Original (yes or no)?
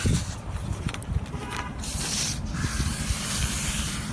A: no